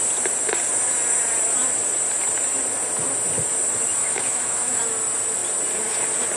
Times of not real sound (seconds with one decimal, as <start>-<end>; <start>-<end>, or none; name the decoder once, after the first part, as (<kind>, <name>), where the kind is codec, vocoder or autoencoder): 4.0-4.8 (autoencoder, DAC-VAE)